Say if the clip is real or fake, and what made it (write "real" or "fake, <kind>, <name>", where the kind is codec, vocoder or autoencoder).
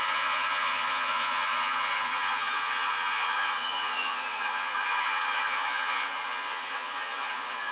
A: fake, vocoder, Vocos